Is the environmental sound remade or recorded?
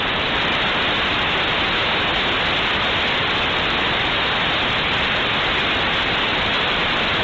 recorded